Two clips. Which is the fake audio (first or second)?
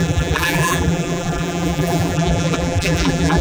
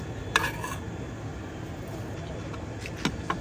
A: first